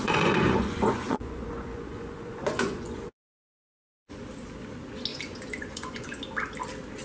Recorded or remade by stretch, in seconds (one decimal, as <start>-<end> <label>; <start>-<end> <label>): 0.0-4.2 remade; 4.2-5.1 recorded; 5.1-6.2 remade; 6.2-7.0 recorded